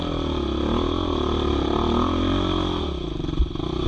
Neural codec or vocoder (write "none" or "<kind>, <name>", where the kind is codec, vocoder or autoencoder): none